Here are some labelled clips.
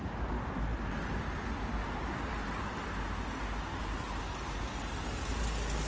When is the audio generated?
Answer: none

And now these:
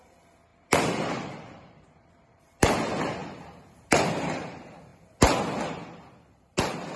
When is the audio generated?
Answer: 0.0-4.9 (vocoder, BigVGAN v2); 6.6-7.0

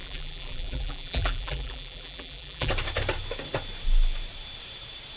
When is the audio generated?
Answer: 0.0-2.7 (vocoder, BigVGAN v2)

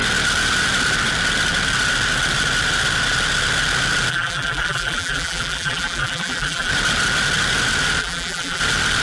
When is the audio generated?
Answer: 4.1-6.7 (vocoder, BigVGAN v2); 8.0-8.6

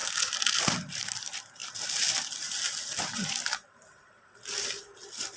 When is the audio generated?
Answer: 0.6-1.6 (vocoder, BigVGAN v2); 4.8-5.4

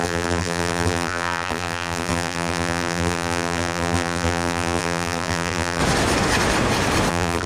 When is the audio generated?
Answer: 0.0-5.8 (vocoder, BigVGAN v2); 7.1-7.5

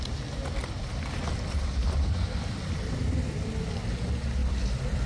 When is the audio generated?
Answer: 0.6-2.9 (vocoder, BigVGAN v2); 4.4-5.1